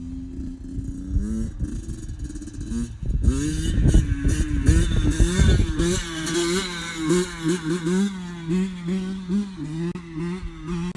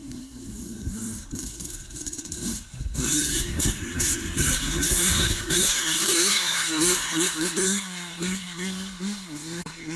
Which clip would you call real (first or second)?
first